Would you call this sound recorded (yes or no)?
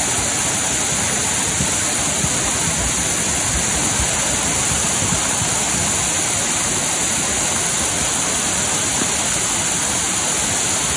yes